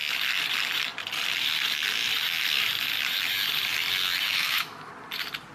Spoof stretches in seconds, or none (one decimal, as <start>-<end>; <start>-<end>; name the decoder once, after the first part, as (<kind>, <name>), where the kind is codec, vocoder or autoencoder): 4.3-4.9 (autoencoder, DAC-VAE)